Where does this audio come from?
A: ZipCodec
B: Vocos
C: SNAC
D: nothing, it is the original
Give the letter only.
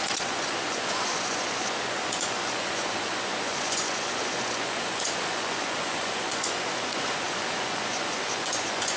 B